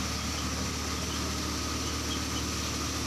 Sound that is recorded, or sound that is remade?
recorded